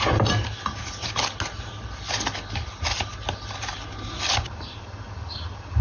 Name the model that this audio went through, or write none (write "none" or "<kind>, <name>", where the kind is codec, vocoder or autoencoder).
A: none